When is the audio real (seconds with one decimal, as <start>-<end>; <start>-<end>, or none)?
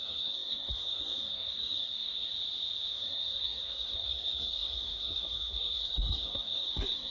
2.3-2.9